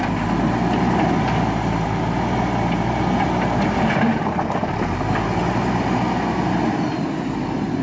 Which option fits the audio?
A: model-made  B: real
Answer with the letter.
B